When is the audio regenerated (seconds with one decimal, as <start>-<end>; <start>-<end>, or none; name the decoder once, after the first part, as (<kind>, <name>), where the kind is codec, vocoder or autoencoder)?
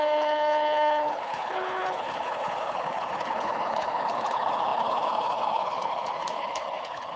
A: 0.0-7.2 (codec, HILCodec)